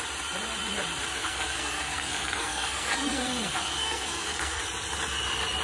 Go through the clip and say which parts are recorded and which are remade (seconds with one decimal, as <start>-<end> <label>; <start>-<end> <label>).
0.0-1.2 recorded; 1.2-4.6 remade; 4.6-5.6 recorded